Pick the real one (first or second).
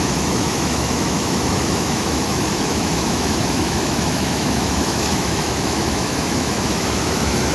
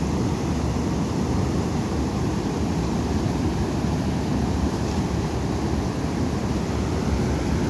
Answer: second